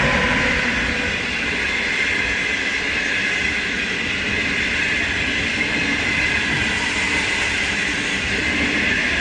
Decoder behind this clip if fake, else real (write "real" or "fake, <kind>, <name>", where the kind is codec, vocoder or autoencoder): real